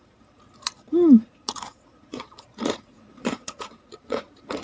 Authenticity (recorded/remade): remade